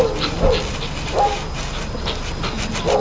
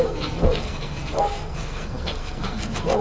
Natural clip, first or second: first